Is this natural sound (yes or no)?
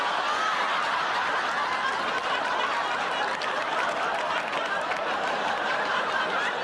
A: yes